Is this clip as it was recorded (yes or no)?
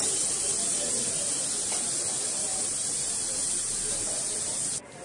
yes